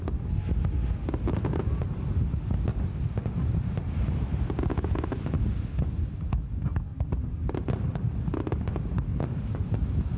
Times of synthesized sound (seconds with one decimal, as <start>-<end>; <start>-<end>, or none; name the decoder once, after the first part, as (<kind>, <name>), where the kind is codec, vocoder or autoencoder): 2.7-4.1 (vocoder, BigVGAN v2); 9.1-9.7